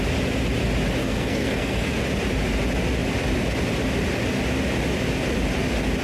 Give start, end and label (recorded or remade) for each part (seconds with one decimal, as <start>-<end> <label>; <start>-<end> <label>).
0.0-1.0 recorded; 1.0-2.0 remade; 2.0-6.0 recorded